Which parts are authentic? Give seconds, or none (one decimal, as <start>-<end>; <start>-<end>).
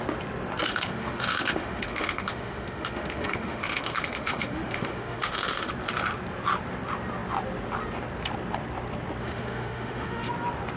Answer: 0.0-0.7; 5.7-9.2; 10.3-10.8